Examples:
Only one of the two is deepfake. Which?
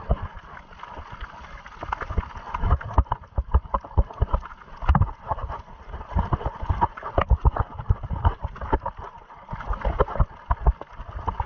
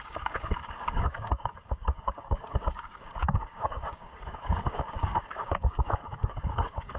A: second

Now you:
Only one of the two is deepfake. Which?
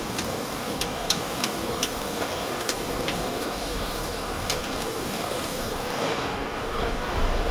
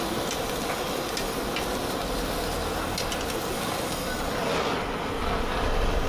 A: first